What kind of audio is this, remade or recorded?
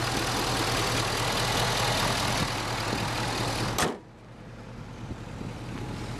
recorded